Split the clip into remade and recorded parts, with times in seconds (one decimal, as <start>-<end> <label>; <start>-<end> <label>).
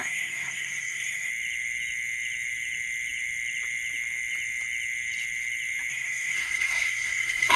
0.0-1.3 remade; 1.3-5.9 recorded; 5.9-7.6 remade